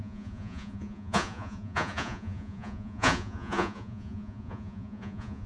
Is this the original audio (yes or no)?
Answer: no